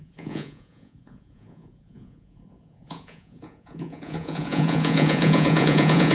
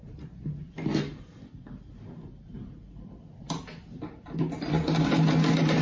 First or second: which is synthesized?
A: first